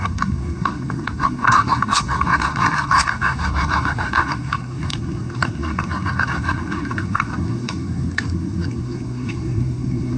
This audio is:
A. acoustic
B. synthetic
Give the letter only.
B